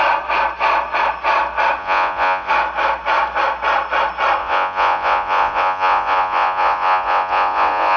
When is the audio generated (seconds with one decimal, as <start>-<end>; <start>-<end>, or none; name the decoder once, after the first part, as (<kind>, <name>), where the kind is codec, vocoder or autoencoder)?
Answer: 1.8-2.5 (vocoder, Vocos); 4.4-8.0